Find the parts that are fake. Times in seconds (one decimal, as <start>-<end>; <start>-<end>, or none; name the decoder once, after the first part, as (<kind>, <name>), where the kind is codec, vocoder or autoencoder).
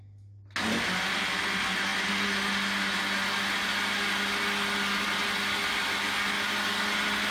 none